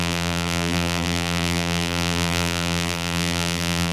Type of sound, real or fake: fake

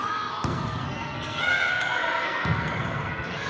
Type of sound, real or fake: fake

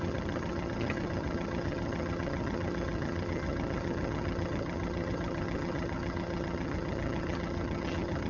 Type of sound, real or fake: fake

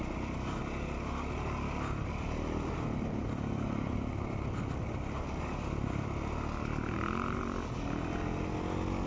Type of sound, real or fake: real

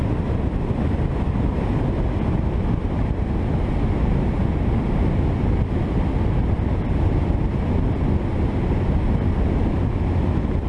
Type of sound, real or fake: real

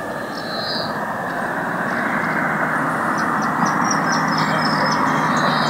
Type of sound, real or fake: real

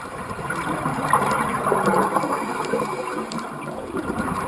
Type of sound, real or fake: fake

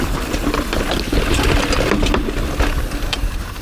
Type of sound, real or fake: real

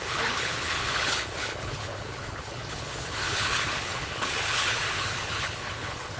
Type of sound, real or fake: fake